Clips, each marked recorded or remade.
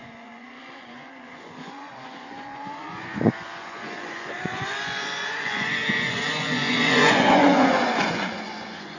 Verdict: remade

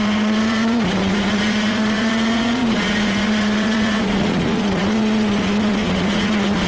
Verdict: remade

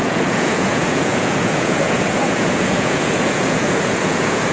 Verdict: remade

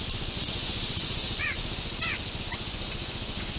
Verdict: remade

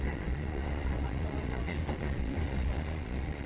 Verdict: remade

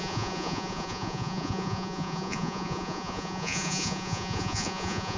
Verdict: remade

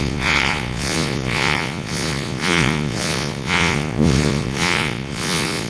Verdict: remade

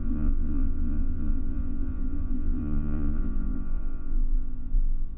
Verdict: remade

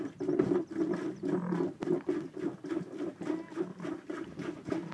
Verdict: recorded